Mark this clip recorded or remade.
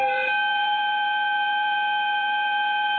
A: remade